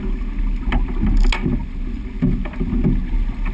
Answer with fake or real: real